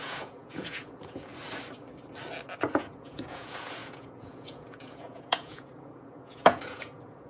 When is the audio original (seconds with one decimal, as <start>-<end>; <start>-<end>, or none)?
1.3-2.6